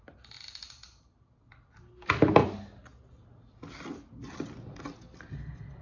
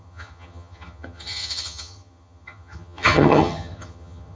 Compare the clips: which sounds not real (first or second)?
second